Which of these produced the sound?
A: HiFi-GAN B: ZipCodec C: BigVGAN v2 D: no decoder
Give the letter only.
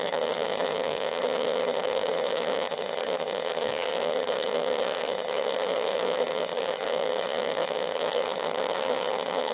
A